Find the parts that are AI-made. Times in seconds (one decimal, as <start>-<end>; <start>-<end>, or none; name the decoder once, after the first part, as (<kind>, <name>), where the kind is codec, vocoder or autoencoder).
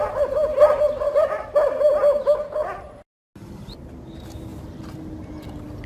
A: none